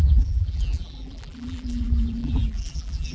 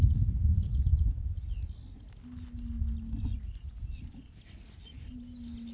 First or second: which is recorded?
second